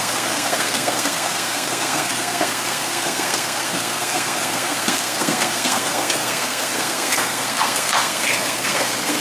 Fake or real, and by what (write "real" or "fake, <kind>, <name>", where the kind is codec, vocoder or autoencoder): fake, codec, SNAC